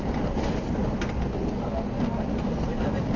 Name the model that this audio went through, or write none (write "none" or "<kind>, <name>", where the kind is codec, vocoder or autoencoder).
none